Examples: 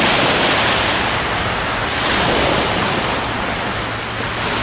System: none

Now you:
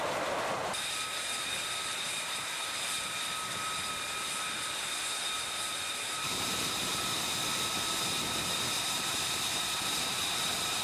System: vocoder, BigVGAN v2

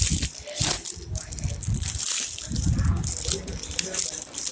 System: none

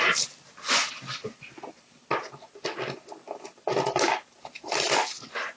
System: none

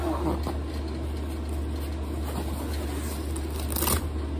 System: none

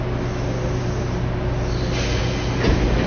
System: none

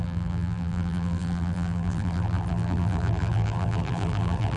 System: vocoder, BigVGAN v2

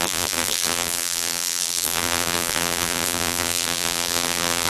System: vocoder, BigVGAN v2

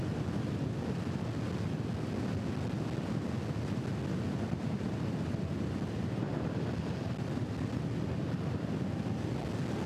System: none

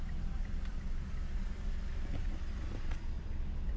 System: vocoder, BigVGAN v2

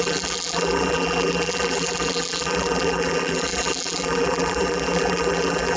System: vocoder, BigVGAN v2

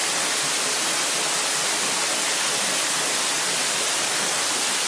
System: none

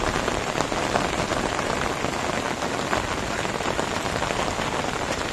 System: none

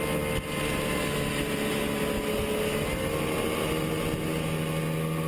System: none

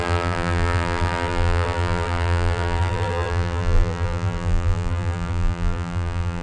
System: vocoder, BigVGAN v2